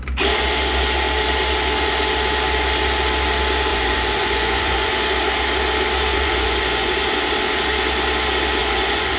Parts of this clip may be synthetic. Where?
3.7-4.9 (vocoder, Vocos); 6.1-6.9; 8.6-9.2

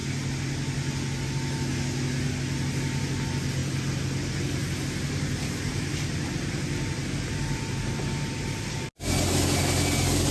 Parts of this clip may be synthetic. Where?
none

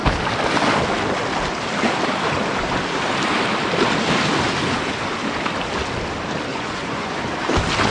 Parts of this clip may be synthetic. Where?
6.5-7.2 (vocoder, Vocos)

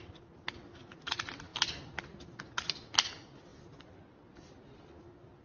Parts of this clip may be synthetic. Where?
none

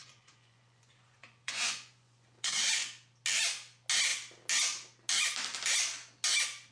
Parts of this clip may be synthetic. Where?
0.0-2.9 (vocoder, Vocos)

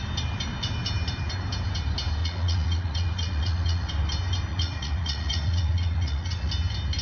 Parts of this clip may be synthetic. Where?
2.2-3.9 (vocoder, Vocos); 4.5-6.5

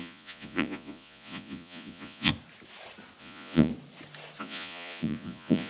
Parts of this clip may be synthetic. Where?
0.0-2.3 (vocoder, Vocos); 3.2-3.7; 4.4-5.7